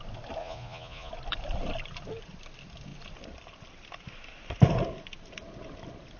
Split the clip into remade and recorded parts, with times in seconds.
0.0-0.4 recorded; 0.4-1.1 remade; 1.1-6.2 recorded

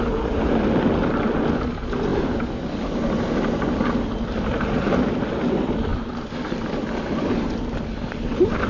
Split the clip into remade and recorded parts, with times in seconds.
0.0-8.7 recorded